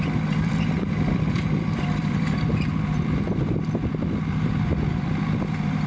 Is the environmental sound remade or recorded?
remade